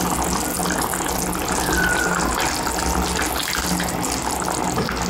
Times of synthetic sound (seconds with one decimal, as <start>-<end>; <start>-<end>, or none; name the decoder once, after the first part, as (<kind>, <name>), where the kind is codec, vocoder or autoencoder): none